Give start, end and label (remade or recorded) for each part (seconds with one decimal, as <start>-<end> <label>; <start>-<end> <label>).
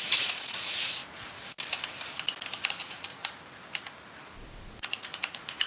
0.0-1.0 remade; 1.0-2.7 recorded; 2.7-3.2 remade; 3.2-4.7 recorded; 4.7-5.7 remade